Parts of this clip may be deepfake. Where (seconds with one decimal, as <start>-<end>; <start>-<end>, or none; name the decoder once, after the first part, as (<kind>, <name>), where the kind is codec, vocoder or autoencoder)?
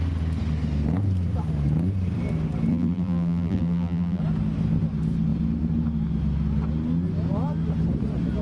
2.7-4.2 (vocoder, BigVGAN v2)